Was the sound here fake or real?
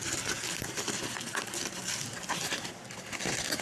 real